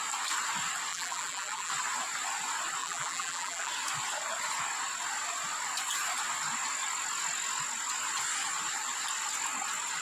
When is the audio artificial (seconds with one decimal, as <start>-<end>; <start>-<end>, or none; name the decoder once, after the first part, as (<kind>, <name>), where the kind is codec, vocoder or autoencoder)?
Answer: 0.9-1.7 (vocoder, BigVGAN v2); 2.8-3.7